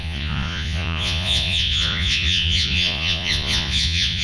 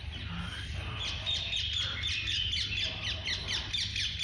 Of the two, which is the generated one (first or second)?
first